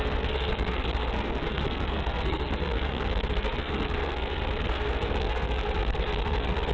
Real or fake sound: fake